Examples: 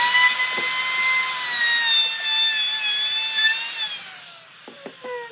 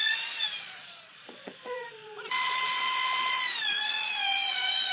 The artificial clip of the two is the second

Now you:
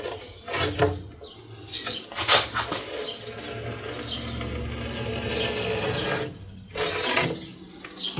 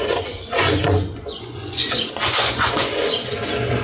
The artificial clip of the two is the second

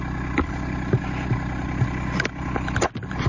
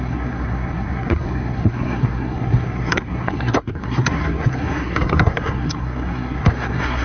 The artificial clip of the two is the second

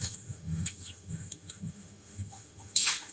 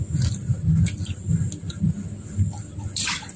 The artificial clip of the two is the first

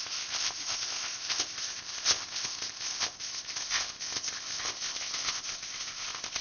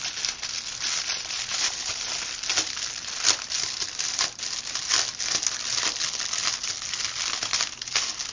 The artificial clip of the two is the first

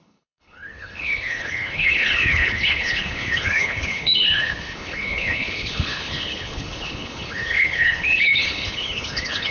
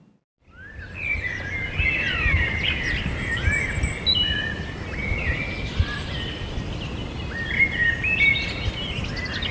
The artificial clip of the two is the first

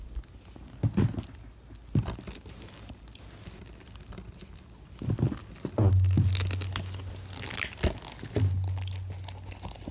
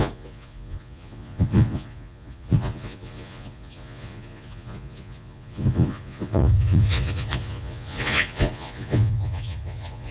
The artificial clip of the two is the second